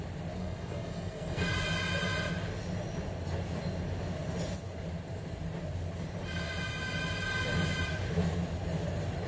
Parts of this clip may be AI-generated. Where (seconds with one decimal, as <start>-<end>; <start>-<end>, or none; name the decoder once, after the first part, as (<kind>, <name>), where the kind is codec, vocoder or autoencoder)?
0.4-1.5 (codec, SNAC)